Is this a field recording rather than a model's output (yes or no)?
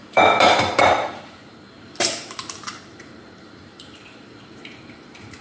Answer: no